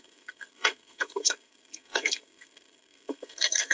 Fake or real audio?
fake